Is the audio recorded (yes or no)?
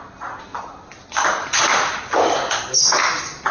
yes